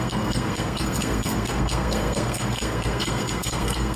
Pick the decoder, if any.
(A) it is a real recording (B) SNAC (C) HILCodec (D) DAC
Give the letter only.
B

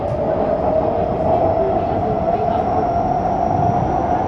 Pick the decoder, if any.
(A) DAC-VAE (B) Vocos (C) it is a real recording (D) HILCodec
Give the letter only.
C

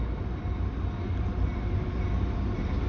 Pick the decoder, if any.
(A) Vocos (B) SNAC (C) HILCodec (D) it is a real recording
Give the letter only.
D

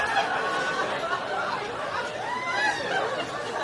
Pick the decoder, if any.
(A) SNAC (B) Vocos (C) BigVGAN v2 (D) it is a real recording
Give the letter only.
D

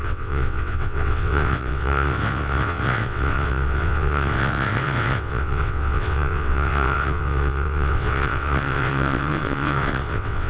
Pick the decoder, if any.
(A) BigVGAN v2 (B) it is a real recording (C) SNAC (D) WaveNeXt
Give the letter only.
D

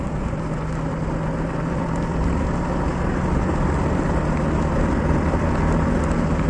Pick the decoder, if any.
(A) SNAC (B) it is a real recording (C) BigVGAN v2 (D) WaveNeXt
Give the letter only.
B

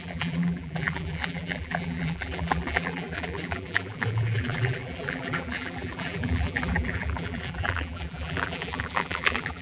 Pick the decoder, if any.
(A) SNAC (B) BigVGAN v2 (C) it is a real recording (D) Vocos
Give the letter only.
B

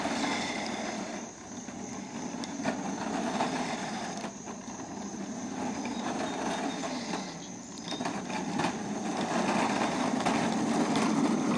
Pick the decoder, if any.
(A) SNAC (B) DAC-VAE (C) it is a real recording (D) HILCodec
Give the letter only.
C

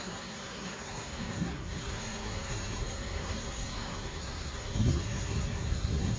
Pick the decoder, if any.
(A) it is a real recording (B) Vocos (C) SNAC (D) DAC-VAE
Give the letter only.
C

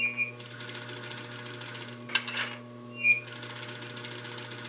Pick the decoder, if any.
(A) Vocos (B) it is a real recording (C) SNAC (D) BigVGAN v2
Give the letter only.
B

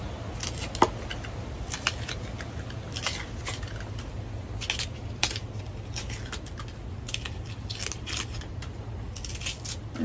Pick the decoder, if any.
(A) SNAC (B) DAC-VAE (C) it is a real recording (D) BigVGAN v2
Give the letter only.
C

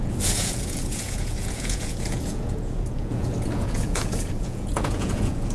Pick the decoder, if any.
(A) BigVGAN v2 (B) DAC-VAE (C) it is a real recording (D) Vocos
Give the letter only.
D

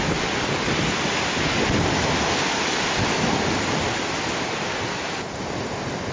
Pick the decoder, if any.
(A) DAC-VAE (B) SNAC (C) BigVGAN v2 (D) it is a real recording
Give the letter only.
D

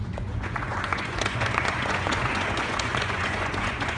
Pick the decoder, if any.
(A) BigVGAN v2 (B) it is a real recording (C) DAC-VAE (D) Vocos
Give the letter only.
D